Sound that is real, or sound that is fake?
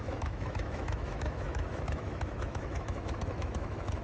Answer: fake